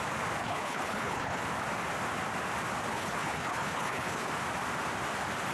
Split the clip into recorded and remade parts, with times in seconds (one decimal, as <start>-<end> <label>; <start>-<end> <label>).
0.0-0.4 recorded; 0.4-1.4 remade; 1.4-2.9 recorded; 2.9-4.3 remade; 4.3-5.5 recorded